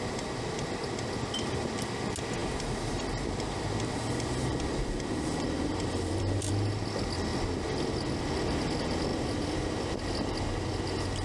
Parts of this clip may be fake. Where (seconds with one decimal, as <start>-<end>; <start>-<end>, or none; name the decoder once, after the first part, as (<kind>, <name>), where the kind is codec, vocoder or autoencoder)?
2.4-6.5 (vocoder, BigVGAN v2); 9.1-9.9